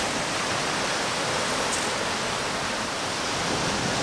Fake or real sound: real